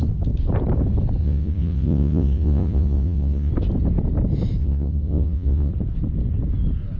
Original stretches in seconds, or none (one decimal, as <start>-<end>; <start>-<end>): 0.0-1.2; 3.5-4.6; 5.7-7.0